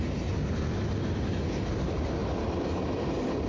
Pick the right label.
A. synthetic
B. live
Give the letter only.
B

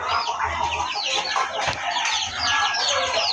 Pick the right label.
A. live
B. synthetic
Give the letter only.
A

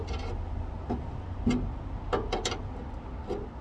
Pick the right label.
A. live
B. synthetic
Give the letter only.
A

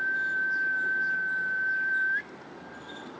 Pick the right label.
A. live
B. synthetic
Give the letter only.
A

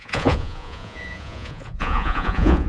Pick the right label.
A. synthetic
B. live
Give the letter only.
A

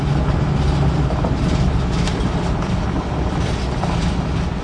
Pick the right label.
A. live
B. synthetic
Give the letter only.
A